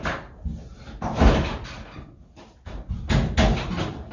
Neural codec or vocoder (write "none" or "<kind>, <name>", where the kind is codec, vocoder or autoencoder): none